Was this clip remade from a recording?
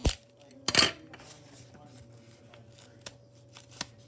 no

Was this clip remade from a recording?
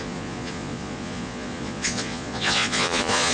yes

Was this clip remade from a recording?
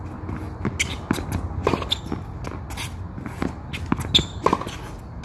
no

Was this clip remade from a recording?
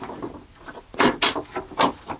no